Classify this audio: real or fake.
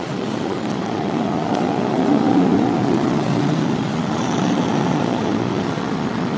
fake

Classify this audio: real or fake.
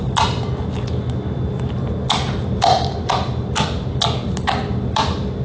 real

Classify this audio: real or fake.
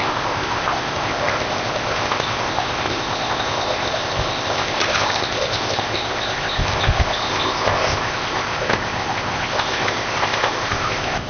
fake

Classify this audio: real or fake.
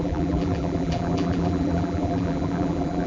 fake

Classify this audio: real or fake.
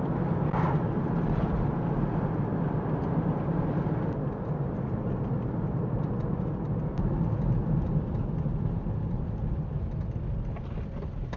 real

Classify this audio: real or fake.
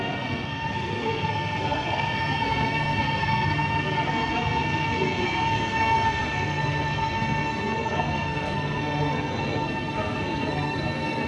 fake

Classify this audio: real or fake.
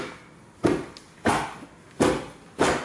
real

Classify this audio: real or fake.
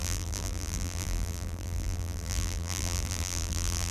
fake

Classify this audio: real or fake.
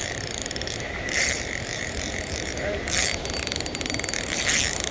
fake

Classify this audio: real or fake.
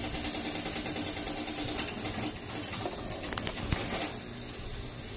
real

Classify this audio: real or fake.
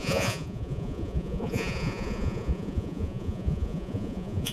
fake